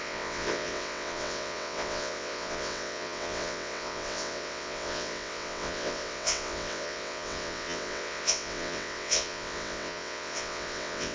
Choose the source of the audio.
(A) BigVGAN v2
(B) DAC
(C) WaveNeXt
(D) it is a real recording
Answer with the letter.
C